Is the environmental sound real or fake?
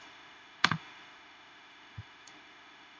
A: fake